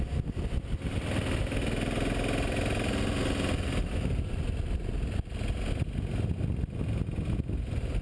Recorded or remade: recorded